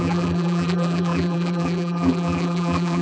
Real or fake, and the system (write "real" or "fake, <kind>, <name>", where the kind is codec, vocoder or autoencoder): fake, vocoder, BigVGAN v2